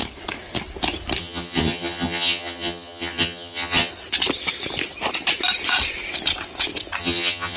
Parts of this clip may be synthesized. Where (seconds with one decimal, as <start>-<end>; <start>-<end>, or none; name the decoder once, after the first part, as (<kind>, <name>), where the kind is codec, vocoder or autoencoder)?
1.2-3.9 (vocoder, HiFi-GAN); 7.0-7.6

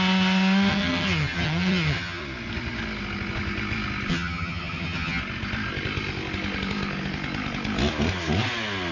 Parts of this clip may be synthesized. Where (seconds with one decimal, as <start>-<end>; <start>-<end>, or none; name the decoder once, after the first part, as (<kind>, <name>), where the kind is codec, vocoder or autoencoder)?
0.7-2.2 (vocoder, HiFi-GAN); 4.1-5.2

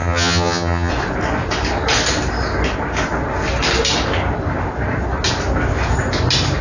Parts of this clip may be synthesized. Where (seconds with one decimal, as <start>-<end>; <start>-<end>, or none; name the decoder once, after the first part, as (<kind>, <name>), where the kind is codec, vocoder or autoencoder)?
0.0-0.9 (vocoder, HiFi-GAN)

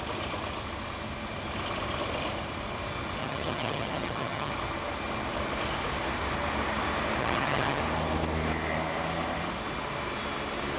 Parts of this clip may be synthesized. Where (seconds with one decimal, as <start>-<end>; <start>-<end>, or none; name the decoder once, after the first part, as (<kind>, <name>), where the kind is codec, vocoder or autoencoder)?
3.2-4.5 (vocoder, HiFi-GAN); 7.2-7.8

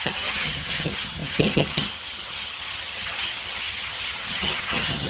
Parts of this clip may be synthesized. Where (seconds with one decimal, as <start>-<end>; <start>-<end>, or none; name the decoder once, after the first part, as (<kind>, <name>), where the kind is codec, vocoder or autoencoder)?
0.0-5.1 (vocoder, HiFi-GAN)

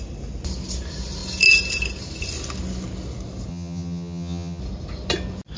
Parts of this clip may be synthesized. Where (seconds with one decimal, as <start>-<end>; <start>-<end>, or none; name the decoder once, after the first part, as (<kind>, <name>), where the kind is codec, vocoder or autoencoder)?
3.5-4.6 (vocoder, HiFi-GAN)

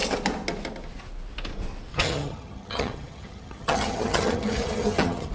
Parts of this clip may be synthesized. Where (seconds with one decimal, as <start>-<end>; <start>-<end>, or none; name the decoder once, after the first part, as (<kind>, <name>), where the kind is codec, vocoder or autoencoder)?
1.9-5.3 (vocoder, HiFi-GAN)

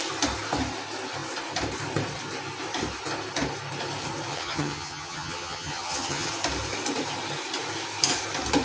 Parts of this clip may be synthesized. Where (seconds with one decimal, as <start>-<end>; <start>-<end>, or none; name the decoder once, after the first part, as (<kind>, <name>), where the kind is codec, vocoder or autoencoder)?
4.3-6.3 (vocoder, HiFi-GAN)